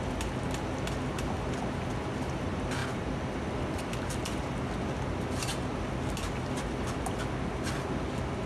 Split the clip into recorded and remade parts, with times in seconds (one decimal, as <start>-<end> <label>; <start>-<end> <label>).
0.0-8.5 recorded